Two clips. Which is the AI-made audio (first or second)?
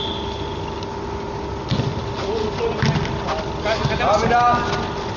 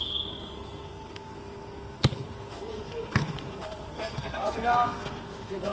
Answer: second